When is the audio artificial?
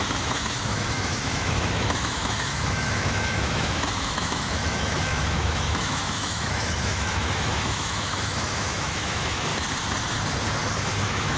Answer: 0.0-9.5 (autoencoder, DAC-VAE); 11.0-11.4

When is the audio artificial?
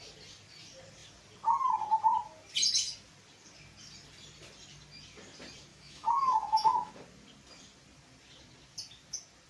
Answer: 5.7-6.9 (autoencoder, DAC-VAE)